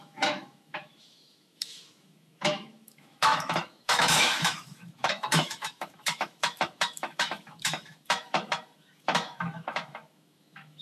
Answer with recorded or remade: remade